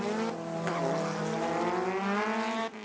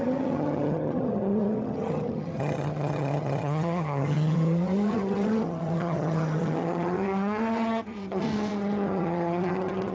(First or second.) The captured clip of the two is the first